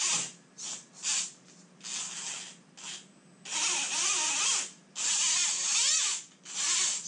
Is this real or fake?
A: real